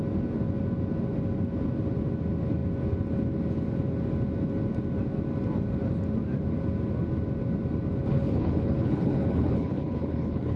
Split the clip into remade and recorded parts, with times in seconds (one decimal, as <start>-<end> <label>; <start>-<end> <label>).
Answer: 0.0-8.1 recorded; 8.1-10.6 remade